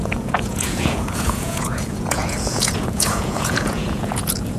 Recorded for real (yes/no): no